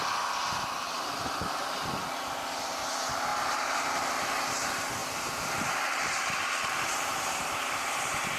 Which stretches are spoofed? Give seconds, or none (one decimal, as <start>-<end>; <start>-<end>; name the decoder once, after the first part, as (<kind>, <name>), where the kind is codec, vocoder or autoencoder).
3.3-3.8 (vocoder, BigVGAN v2); 5.0-6.5; 7.1-8.4